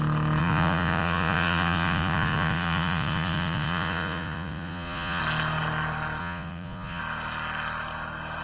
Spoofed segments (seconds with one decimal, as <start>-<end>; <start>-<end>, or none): 0.4-5.2; 6.2-7.0